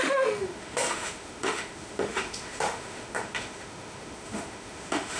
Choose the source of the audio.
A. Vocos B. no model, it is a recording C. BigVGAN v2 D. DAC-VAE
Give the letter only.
D